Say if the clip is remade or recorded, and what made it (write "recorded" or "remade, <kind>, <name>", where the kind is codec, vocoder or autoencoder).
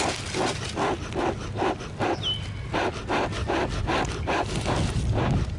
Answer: recorded